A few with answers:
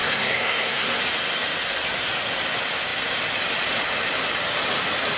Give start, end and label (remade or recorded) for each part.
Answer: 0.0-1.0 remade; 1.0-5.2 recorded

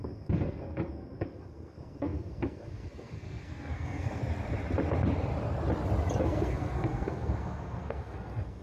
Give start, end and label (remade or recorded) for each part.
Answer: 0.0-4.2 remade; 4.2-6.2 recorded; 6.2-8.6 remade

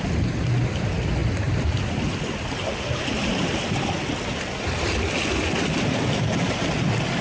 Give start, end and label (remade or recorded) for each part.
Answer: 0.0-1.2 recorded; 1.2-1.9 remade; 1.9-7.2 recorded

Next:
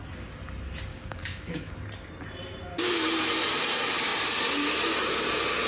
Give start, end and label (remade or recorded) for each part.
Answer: 0.0-0.9 recorded; 0.9-1.7 remade; 1.7-5.7 recorded

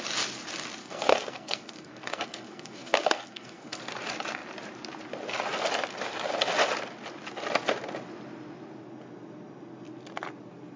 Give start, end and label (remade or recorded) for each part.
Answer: 0.0-0.8 recorded; 0.8-3.8 remade; 3.8-10.8 recorded

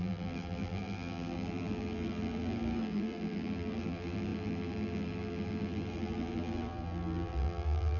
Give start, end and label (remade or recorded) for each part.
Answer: 0.0-8.0 remade

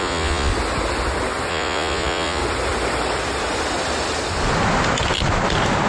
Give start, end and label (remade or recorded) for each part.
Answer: 0.0-0.5 remade; 0.5-1.5 recorded; 1.5-2.4 remade; 2.4-5.9 recorded